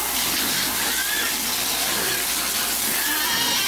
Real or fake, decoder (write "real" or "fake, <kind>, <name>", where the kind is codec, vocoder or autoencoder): real